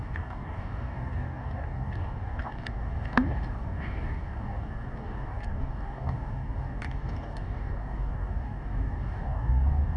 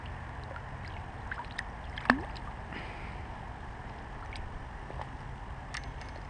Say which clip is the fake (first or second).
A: first